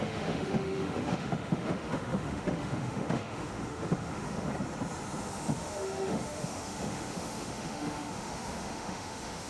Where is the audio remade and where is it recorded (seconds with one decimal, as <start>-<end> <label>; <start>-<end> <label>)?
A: 0.0-4.5 remade; 4.5-5.2 recorded; 5.2-9.5 remade

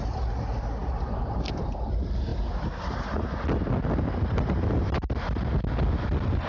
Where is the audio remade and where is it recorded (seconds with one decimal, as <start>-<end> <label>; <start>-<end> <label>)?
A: 0.0-6.5 recorded